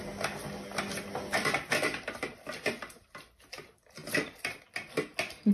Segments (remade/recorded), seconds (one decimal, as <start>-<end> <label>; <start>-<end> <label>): 0.0-1.9 recorded; 1.9-3.4 remade; 3.4-4.0 recorded; 4.0-4.9 remade; 4.9-5.5 recorded